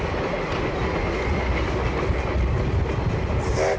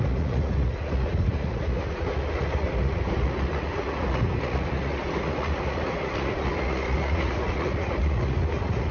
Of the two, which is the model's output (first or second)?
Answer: second